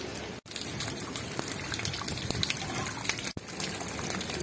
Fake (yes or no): no